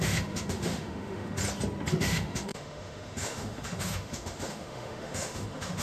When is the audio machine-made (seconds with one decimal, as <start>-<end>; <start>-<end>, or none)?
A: 0.0-1.4; 1.9-5.8